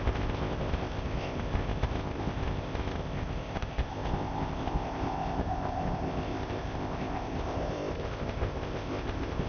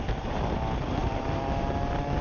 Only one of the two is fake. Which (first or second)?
first